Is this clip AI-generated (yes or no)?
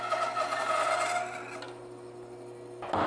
no